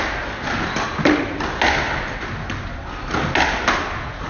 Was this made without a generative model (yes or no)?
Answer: yes